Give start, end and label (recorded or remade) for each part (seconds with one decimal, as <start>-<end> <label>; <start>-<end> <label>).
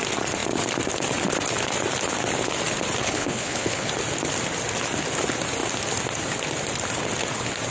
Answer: 0.0-3.0 recorded; 3.0-3.9 remade; 3.9-7.7 recorded